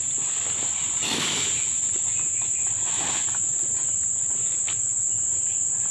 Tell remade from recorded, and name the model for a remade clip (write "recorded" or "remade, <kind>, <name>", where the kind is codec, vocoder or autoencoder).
recorded